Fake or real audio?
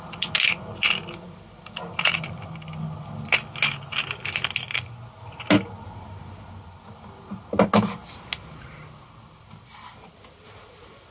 real